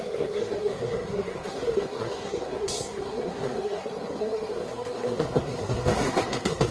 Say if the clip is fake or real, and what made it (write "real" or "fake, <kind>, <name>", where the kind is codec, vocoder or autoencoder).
fake, codec, SNAC